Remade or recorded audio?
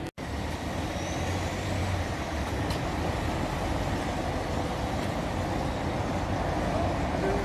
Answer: recorded